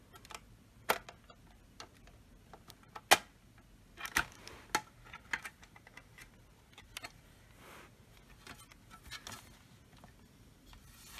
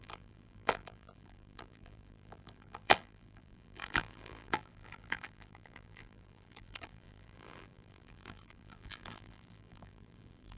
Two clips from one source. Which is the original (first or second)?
first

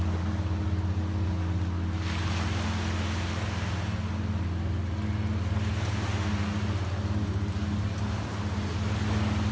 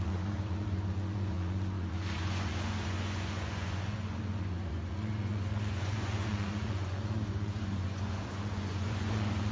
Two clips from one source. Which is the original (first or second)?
first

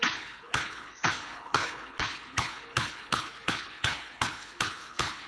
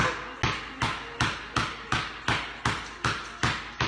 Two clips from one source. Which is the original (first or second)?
second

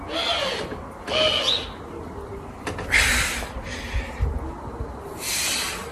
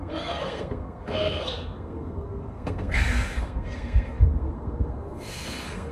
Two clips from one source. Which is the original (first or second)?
first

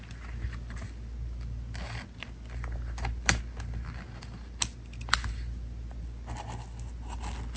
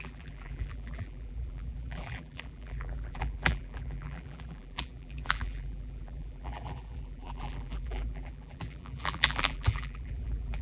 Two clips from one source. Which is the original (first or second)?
first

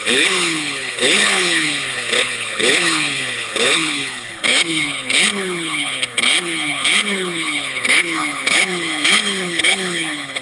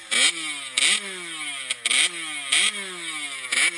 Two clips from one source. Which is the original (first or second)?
second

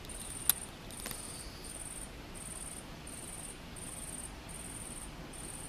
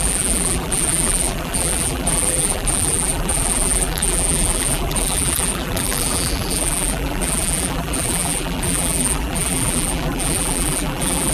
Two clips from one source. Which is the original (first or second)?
first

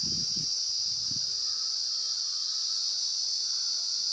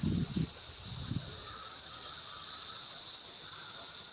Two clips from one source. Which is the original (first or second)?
first